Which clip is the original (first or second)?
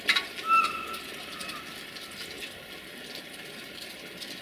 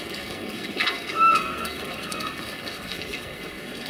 first